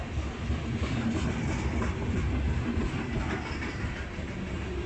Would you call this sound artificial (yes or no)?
no